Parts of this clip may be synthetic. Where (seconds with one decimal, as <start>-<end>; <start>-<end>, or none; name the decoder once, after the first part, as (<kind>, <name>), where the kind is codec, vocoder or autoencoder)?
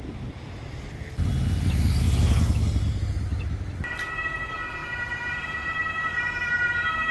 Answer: 4.8-7.1 (vocoder, BigVGAN v2)